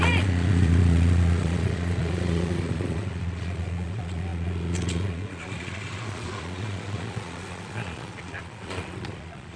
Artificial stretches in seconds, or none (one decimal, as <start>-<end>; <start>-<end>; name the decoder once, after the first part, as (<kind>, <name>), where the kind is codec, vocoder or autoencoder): 0.0-9.6 (vocoder, Vocos)